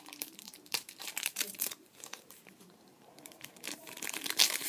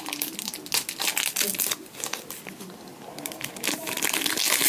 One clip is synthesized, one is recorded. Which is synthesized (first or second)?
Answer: first